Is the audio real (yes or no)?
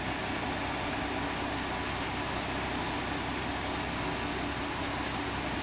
yes